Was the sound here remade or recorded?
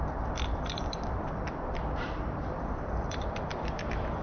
remade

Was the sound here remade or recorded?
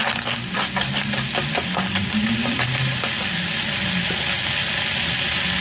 recorded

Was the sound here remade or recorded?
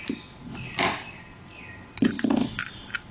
recorded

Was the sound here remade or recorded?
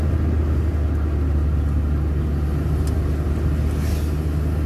recorded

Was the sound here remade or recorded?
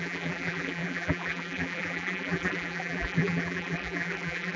remade